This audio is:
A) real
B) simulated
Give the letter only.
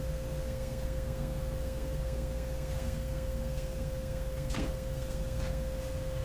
B